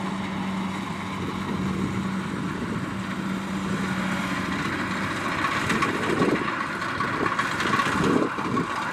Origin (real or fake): real